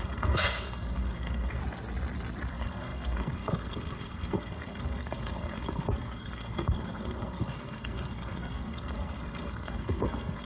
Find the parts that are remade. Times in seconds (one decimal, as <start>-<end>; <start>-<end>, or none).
0.0-1.6; 2.5-10.4